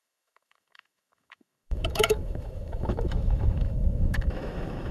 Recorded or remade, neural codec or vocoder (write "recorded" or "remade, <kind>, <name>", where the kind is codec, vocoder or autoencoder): remade, autoencoder, DAC-VAE